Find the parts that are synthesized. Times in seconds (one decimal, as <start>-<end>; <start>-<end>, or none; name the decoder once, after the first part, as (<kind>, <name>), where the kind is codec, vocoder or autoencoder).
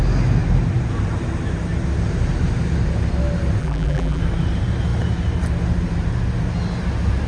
3.6-4.2 (vocoder, BigVGAN v2)